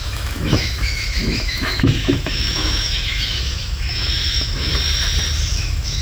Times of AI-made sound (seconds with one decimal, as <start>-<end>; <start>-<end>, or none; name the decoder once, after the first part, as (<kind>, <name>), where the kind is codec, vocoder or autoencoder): 0.0-4.7 (autoencoder, DAC-VAE); 5.5-6.0